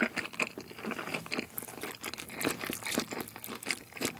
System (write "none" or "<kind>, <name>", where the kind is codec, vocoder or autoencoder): none